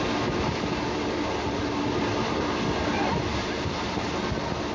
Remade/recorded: recorded